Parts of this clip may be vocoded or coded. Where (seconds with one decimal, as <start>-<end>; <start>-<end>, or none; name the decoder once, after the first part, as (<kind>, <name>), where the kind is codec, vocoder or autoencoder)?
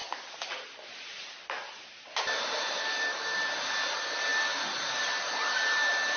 none